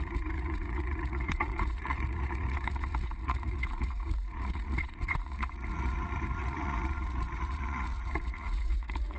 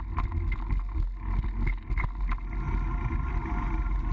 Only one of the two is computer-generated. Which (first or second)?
first